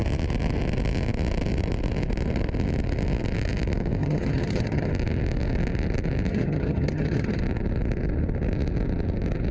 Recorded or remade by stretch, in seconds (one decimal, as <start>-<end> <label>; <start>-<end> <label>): 0.0-4.0 recorded; 4.0-4.9 remade; 4.9-6.3 recorded; 6.3-7.4 remade; 7.4-9.5 recorded